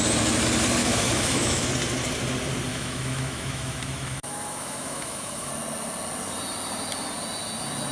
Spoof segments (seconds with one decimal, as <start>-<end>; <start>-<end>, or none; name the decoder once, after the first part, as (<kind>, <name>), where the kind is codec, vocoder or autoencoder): 0.8-1.7 (autoencoder, DAC-VAE); 2.7-5.5